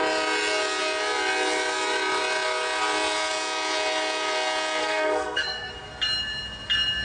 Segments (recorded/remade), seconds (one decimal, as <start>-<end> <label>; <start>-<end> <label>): 0.0-4.8 recorded; 4.8-5.7 remade; 5.7-7.0 recorded